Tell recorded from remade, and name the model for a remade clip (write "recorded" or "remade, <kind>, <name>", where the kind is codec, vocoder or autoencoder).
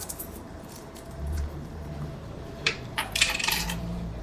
remade, vocoder, BigVGAN v2